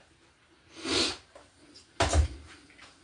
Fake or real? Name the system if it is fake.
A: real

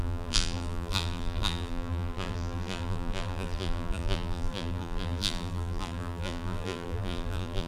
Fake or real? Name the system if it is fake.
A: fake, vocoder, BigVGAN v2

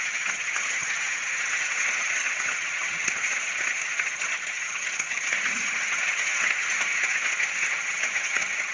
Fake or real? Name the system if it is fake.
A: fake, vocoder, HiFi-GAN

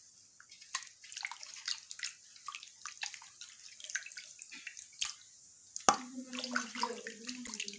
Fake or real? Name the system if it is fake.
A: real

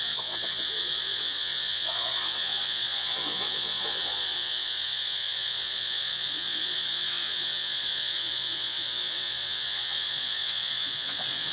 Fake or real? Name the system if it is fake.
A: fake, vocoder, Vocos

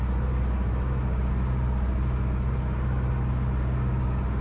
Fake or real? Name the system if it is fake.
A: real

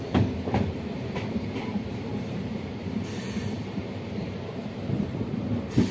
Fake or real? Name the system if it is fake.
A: fake, vocoder, BigVGAN v2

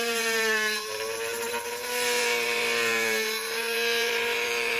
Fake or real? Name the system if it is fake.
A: fake, vocoder, BigVGAN v2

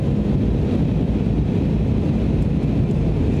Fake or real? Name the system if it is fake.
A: real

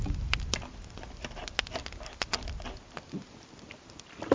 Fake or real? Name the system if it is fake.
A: real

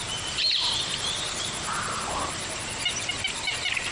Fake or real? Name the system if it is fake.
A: real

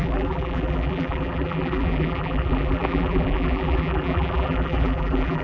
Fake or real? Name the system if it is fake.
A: fake, vocoder, BigVGAN v2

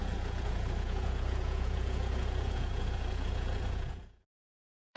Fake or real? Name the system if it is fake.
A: fake, vocoder, Vocos